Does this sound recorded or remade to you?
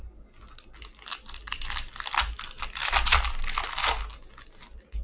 recorded